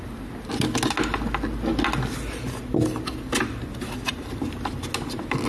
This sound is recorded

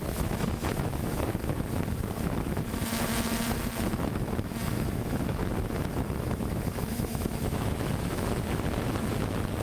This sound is remade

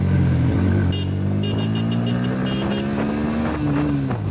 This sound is recorded